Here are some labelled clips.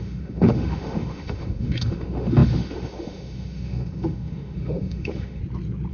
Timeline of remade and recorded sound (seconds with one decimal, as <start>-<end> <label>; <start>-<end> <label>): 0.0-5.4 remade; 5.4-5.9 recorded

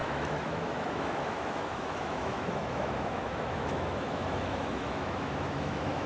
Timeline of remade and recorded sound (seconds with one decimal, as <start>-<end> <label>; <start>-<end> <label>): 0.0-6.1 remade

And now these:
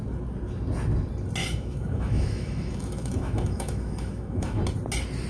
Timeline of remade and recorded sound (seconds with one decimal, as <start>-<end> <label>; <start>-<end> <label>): 0.0-1.4 recorded; 1.4-4.6 remade; 4.6-5.3 recorded

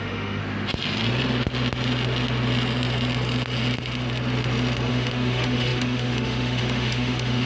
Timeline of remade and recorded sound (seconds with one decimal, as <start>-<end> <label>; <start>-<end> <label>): 0.0-0.4 remade; 0.4-4.9 recorded; 4.9-7.5 remade

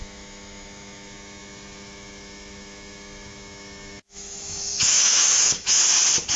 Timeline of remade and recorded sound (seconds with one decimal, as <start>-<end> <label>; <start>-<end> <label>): 0.0-5.8 remade; 5.8-6.4 recorded

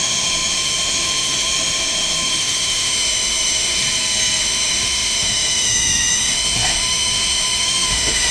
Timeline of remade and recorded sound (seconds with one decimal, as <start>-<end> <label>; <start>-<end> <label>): 0.0-3.8 remade; 3.8-4.4 recorded; 4.4-8.3 remade